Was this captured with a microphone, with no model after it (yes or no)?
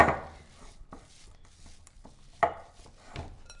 no